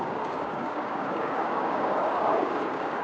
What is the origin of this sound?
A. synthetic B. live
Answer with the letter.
A